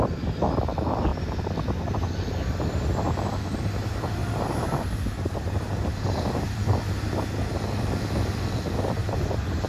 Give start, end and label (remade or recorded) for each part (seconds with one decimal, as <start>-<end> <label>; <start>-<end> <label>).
0.0-4.2 recorded; 4.2-7.0 remade; 7.0-9.0 recorded; 9.0-9.7 remade

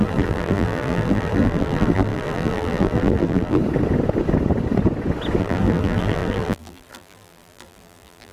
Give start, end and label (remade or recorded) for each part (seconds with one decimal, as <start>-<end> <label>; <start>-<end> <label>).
0.0-3.6 remade; 3.6-5.4 recorded; 5.4-8.3 remade

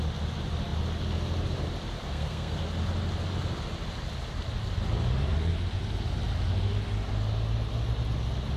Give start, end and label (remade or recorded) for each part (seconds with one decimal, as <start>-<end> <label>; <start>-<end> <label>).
0.0-2.1 recorded; 2.1-2.6 remade; 2.6-8.6 recorded

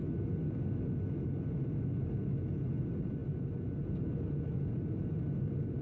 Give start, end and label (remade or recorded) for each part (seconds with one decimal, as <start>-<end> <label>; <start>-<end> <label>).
0.0-5.8 recorded

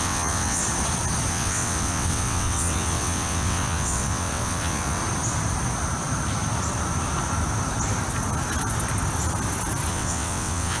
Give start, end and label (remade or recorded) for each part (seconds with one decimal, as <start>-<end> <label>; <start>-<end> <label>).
0.0-0.6 remade; 0.6-1.3 recorded; 1.3-5.0 remade; 5.0-9.9 recorded; 9.9-10.8 remade

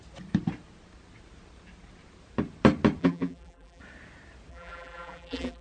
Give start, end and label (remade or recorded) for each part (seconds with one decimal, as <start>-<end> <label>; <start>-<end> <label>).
0.0-3.0 recorded; 3.0-3.8 remade; 3.8-4.5 recorded; 4.5-5.6 remade

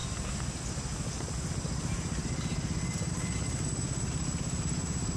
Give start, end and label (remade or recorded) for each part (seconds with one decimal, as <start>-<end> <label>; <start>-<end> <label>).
0.0-5.2 recorded